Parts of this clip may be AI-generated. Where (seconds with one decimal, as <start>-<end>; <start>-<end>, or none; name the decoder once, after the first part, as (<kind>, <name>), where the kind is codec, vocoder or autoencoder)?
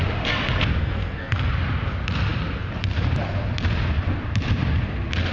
0.8-1.5 (codec, SNAC)